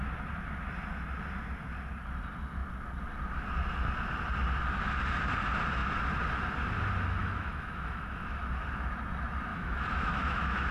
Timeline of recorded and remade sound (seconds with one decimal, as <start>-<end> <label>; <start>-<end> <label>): 0.0-7.2 recorded; 7.2-8.4 remade; 8.4-9.5 recorded; 9.5-10.7 remade